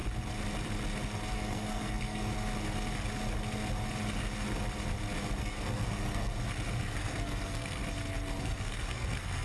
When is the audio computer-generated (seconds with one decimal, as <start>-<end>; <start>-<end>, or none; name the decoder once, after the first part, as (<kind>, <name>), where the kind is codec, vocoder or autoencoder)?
1.3-2.3 (codec, SNAC); 5.4-6.3; 6.8-7.8; 8.4-9.4